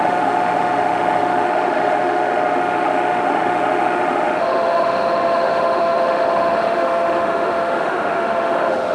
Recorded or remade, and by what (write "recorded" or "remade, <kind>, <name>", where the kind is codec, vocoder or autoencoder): remade, autoencoder, DAC-VAE